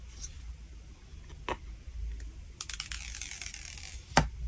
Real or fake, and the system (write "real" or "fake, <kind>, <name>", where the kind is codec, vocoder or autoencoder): real